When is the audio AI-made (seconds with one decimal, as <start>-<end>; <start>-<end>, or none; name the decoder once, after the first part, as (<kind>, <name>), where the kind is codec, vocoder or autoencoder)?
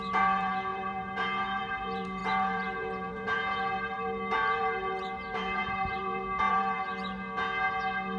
0.0-6.9 (vocoder, BigVGAN v2)